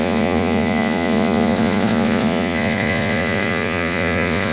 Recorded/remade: remade